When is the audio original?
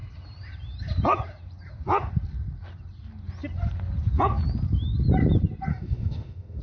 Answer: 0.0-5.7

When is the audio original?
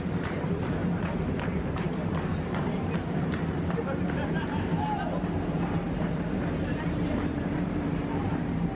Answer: none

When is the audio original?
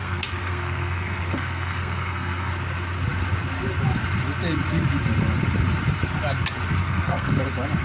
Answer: 2.5-6.8; 7.3-7.8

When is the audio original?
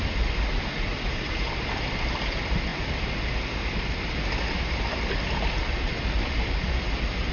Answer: 0.0-0.5; 1.5-7.3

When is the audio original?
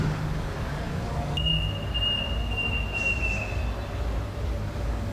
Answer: 1.5-4.6